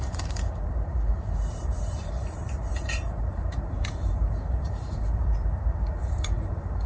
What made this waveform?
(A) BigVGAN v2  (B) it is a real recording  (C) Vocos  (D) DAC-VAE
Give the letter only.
A